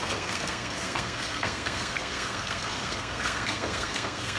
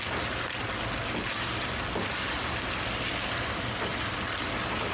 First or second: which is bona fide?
second